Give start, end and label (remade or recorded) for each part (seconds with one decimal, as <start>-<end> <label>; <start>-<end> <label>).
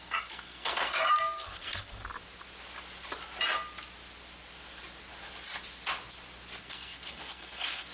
0.0-2.0 remade; 2.0-6.6 recorded; 6.6-7.9 remade